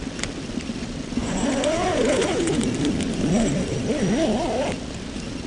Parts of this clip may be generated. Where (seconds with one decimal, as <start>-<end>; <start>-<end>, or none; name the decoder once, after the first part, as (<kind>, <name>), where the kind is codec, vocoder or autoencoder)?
1.2-2.6 (vocoder, Vocos)